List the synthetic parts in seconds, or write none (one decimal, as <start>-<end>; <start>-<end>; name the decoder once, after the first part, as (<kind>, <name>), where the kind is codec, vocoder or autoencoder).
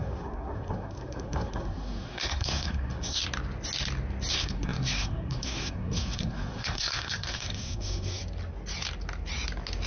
0.0-3.2 (codec, SNAC); 4.3-8.2